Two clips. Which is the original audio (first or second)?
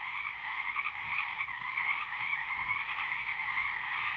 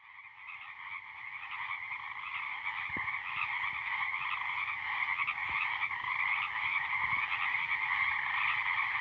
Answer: second